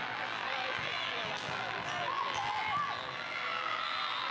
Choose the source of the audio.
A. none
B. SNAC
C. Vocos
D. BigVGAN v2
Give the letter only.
D